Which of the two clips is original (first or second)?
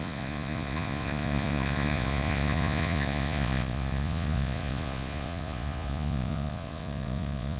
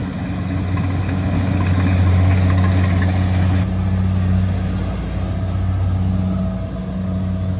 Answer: second